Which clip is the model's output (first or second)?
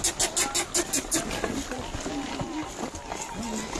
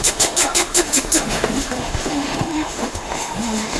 second